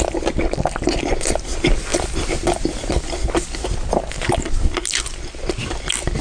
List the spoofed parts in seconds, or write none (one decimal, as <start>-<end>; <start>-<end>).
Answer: none